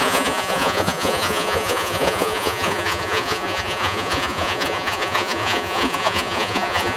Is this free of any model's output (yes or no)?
no